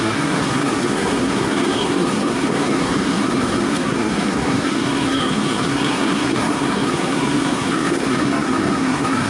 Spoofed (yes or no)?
yes